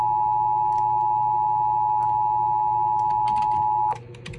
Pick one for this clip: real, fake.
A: real